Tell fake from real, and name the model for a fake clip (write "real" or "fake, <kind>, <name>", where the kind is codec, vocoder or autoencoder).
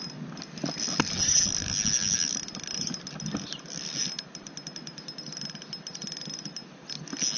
real